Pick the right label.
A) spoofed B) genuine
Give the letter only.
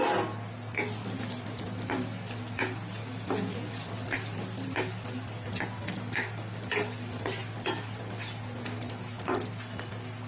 B